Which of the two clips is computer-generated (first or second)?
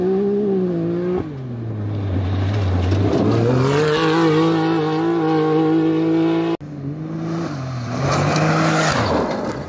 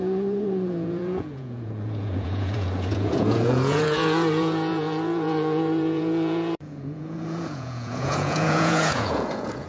second